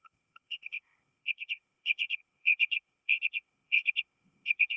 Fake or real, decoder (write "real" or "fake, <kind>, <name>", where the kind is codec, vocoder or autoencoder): fake, codec, ZipCodec